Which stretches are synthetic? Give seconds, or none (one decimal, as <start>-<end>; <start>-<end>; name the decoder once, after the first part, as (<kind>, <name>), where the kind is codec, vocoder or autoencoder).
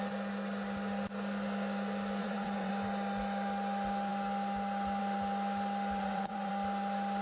2.2-2.7 (vocoder, WaveNeXt); 6.0-6.5